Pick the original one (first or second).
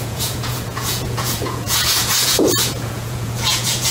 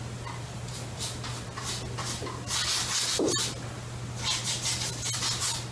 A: second